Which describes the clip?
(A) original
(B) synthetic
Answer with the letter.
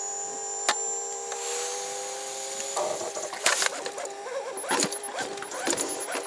A